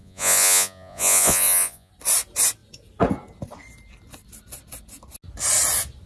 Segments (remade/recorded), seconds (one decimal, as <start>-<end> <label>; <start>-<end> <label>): 0.0-1.9 remade; 1.9-6.1 recorded